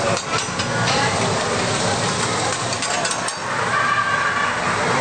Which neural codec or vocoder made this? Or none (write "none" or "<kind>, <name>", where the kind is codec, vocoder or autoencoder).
none